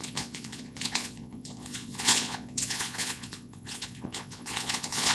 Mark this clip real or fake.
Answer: fake